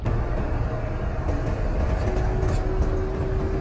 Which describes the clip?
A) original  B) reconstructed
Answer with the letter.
A